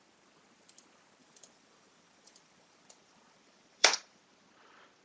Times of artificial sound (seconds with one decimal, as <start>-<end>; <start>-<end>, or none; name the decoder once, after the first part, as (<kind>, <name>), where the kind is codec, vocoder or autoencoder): 1.2-4.2 (vocoder, BigVGAN v2)

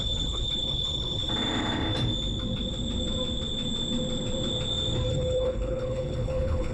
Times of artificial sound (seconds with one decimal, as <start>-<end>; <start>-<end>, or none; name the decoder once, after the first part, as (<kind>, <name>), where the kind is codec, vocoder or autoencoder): 0.0-1.2 (codec, HILCodec); 5.1-6.7

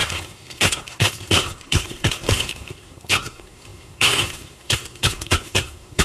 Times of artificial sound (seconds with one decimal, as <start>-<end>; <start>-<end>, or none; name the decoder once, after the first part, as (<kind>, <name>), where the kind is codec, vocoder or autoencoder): 0.0-6.0 (codec, SNAC)

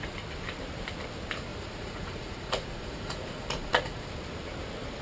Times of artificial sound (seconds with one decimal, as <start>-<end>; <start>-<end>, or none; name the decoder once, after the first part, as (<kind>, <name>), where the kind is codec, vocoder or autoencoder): 1.5-4.1 (vocoder, Vocos)